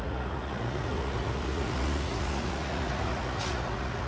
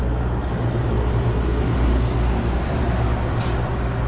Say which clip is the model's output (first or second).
first